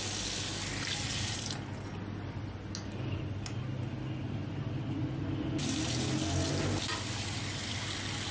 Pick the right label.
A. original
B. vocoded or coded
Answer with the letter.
A